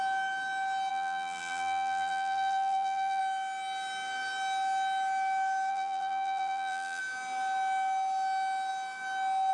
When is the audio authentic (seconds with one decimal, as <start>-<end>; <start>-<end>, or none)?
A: 0.0-0.9; 3.2-5.7; 7.0-9.5